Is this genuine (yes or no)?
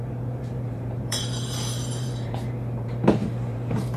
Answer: no